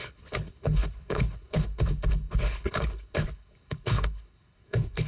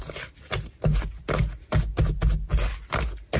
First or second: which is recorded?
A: second